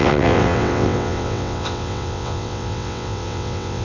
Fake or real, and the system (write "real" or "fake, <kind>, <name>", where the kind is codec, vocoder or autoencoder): fake, vocoder, WaveNeXt